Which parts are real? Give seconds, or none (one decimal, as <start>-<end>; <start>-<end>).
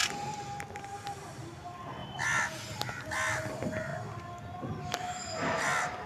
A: 0.0-6.1